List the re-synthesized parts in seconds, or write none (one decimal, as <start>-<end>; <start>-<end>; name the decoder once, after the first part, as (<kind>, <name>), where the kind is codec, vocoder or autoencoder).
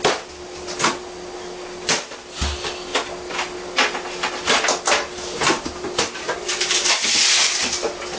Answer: none